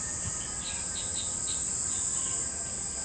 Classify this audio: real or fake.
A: real